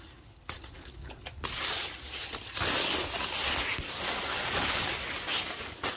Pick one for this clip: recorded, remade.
recorded